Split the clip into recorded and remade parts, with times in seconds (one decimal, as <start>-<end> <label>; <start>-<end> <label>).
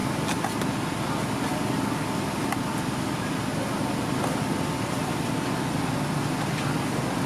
0.0-7.3 recorded